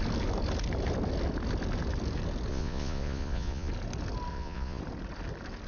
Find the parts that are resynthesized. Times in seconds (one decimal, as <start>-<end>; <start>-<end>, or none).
2.5-3.7; 4.3-4.8